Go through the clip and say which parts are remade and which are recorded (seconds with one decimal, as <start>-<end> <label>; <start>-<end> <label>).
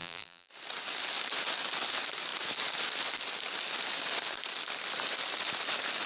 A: 0.0-0.5 remade; 0.5-6.1 recorded